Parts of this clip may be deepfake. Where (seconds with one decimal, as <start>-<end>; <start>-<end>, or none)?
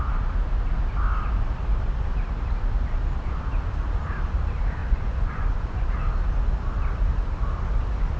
4.8-5.9